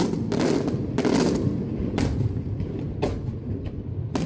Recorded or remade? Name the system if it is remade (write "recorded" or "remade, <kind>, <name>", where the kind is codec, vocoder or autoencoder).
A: recorded